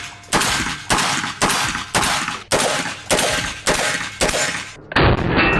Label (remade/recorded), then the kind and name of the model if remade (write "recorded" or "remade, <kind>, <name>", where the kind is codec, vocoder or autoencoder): recorded